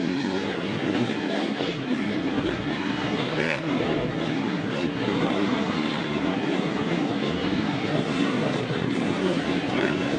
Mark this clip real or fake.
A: fake